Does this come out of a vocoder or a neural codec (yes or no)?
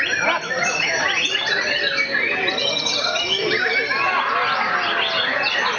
no